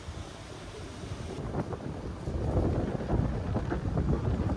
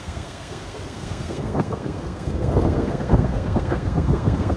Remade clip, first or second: second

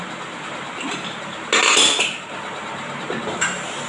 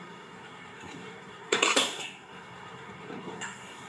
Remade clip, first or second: second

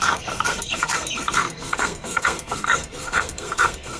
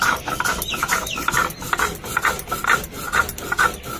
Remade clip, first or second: first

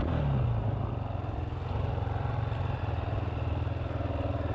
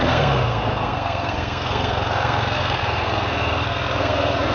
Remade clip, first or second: second